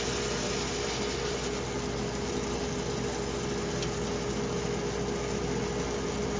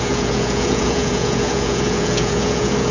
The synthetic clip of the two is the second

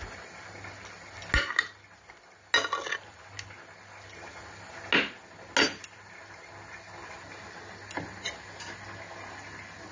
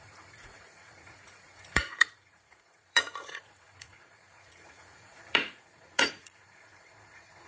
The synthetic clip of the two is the second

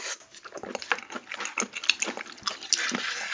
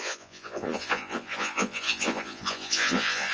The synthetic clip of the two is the second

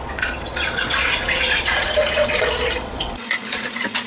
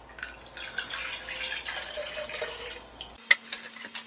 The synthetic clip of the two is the first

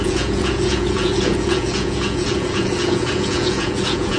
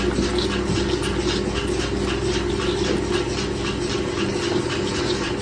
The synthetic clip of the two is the first